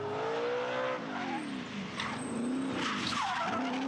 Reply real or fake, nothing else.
real